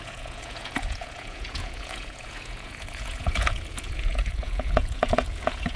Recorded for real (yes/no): no